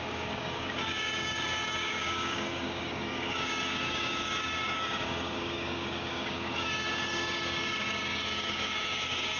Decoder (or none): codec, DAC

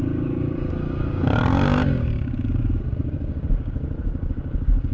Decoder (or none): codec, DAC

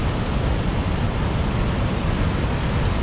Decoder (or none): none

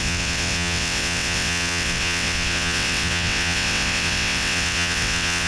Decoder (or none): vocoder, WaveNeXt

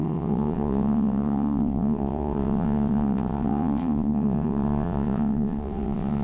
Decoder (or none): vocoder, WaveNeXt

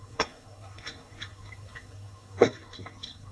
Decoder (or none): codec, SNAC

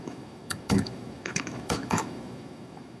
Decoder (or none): autoencoder, DAC-VAE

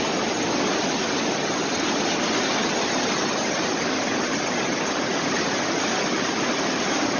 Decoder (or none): none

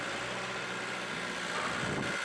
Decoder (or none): none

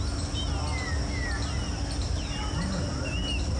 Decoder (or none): none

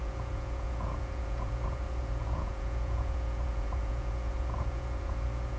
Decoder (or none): vocoder, Vocos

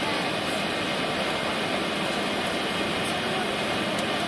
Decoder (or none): none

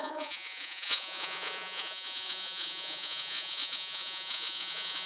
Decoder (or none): vocoder, Vocos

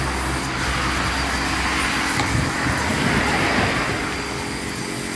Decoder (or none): none